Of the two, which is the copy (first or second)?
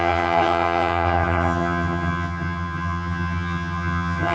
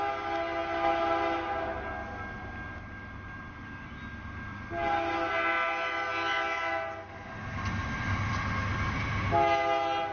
first